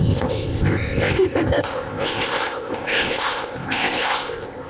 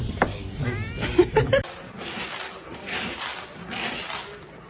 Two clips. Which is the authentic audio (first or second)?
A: second